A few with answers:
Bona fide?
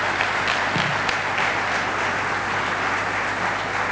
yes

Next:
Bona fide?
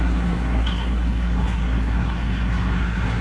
no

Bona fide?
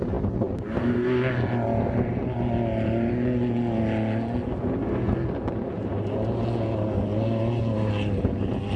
yes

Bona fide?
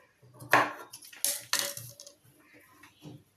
yes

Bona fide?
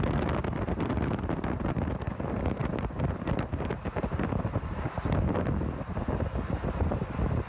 yes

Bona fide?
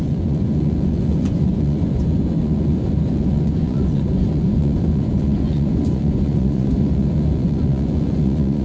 no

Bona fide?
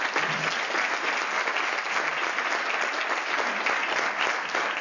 yes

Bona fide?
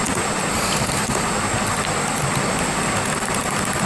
yes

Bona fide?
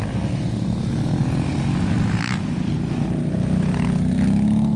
yes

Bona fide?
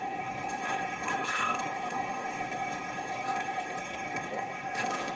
no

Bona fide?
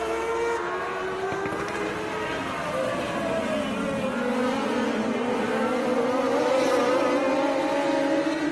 yes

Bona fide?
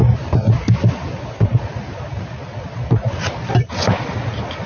yes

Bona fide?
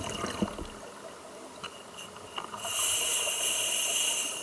yes